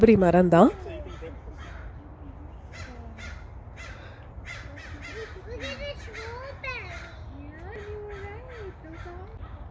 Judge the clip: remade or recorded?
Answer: recorded